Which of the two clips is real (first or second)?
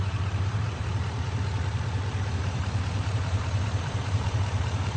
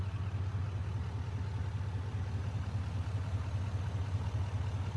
second